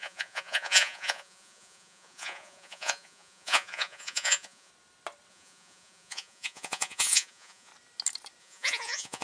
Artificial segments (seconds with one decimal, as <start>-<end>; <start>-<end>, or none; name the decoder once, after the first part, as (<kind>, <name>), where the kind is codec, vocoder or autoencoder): 0.0-4.7 (vocoder, Vocos); 5.3-7.7; 8.4-9.2